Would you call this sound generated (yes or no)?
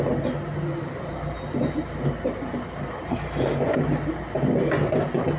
no